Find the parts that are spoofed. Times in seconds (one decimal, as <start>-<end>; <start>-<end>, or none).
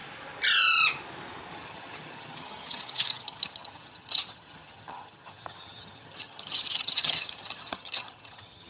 1.5-8.7